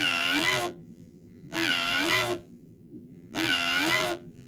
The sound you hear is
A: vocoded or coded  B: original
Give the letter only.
A